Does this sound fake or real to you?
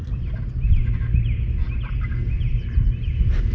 real